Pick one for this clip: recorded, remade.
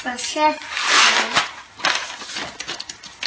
recorded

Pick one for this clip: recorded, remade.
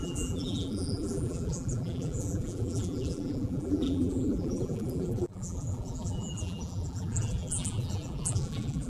remade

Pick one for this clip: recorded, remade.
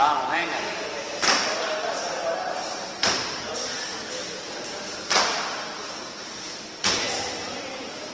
remade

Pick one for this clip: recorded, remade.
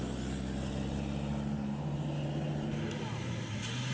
recorded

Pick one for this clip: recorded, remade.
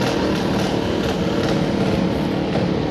recorded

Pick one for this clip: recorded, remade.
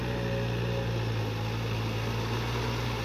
recorded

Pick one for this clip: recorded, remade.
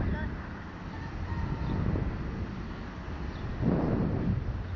recorded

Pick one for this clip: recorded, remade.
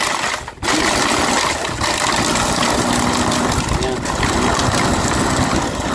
recorded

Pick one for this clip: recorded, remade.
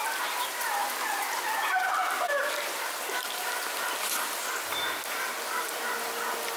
recorded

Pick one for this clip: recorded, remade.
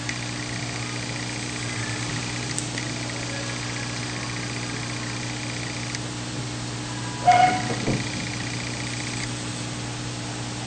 recorded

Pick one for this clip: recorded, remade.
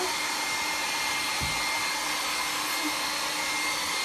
recorded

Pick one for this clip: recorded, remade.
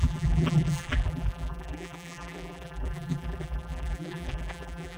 remade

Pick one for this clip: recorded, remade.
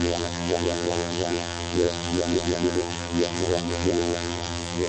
remade